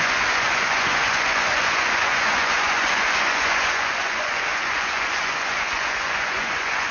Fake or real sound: fake